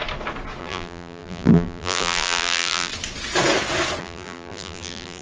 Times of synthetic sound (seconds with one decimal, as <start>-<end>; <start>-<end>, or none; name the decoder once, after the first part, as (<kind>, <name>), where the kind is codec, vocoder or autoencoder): 0.6-2.9 (vocoder, BigVGAN v2); 4.0-5.2